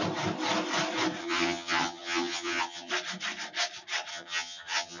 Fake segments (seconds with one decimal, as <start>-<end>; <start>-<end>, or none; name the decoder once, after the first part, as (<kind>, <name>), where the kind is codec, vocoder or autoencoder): 1.2-2.9 (vocoder, HiFi-GAN); 4.1-5.0